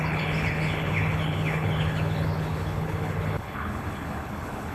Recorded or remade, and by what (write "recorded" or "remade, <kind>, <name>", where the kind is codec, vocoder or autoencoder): remade, codec, HILCodec